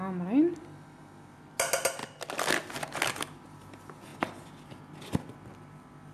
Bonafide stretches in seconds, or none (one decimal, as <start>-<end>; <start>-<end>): 0.0-6.1